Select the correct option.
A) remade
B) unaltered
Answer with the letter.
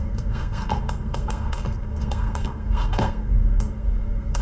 A